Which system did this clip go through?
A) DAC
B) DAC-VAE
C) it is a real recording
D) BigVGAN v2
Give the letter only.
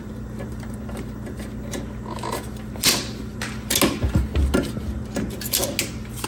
C